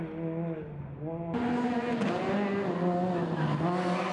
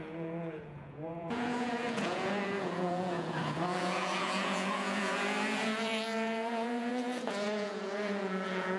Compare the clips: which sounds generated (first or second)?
second